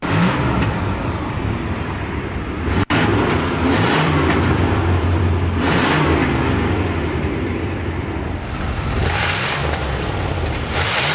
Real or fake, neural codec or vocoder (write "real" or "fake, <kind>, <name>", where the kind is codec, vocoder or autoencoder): fake, vocoder, BigVGAN v2